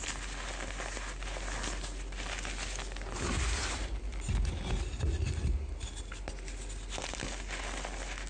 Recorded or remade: recorded